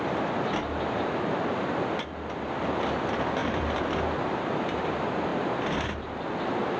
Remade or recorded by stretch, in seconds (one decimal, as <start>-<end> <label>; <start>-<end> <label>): 0.0-6.8 recorded